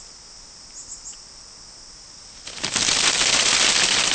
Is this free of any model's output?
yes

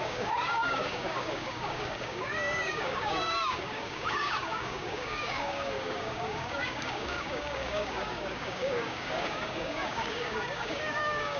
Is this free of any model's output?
no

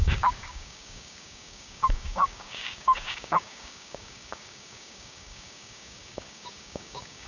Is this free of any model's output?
no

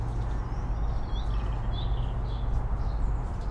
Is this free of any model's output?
yes